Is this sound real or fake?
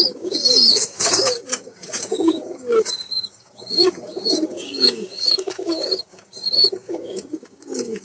fake